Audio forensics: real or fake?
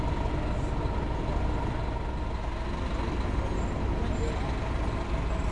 real